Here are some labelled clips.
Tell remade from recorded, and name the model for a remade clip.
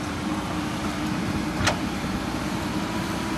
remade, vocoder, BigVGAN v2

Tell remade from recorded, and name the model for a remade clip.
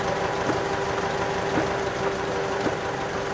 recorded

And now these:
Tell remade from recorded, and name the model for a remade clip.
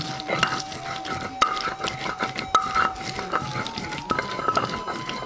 recorded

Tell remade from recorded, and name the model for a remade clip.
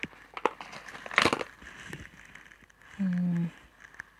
recorded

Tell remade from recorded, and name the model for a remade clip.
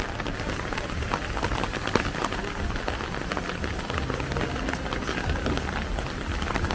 recorded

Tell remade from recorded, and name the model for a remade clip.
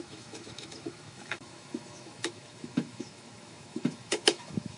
remade, autoencoder, DAC-VAE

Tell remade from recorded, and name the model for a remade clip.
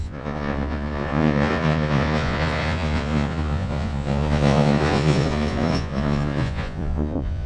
remade, vocoder, Vocos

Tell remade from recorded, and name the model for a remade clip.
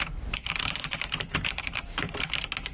remade, vocoder, BigVGAN v2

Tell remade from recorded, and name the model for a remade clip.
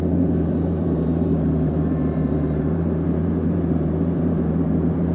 remade, vocoder, BigVGAN v2